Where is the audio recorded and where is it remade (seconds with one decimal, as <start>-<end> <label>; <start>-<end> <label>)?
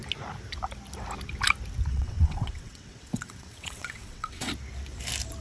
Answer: 0.0-1.9 recorded; 1.9-4.5 remade; 4.5-5.4 recorded